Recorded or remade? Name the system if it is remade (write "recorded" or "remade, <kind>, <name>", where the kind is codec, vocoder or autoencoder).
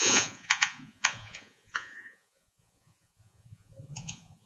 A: remade, vocoder, Vocos